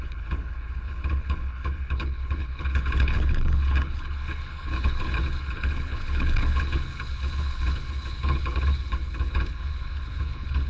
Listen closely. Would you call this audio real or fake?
fake